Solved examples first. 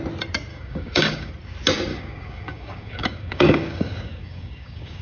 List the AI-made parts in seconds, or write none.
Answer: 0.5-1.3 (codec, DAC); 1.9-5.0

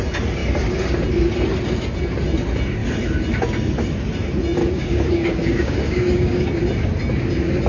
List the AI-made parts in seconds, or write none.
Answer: 4.6-6.5 (codec, DAC)

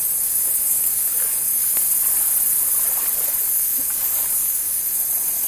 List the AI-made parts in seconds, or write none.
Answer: 0.0-1.7 (codec, DAC); 3.5-4.8

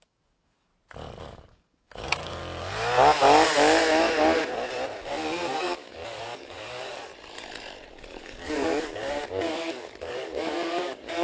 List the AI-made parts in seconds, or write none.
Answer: 0.0-0.7 (codec, DAC); 1.2-2.4; 5.6-7.1; 7.9-11.2

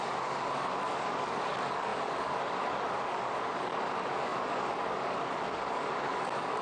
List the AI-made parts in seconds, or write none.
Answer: 0.0-6.6 (codec, DAC)

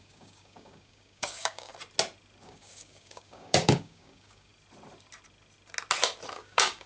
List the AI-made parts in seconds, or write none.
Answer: 0.0-1.7 (codec, DAC); 2.4-4.5; 6.3-6.9

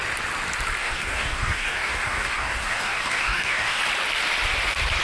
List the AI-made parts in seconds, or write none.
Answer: 0.8-3.8 (codec, DAC)

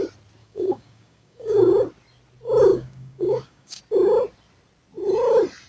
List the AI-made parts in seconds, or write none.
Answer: 0.4-1.7 (codec, DAC); 2.7-3.8